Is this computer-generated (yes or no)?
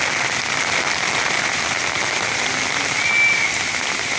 no